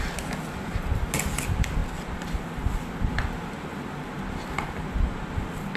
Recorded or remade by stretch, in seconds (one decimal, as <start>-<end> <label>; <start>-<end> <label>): 0.0-1.8 recorded; 1.8-3.0 remade; 3.0-5.8 recorded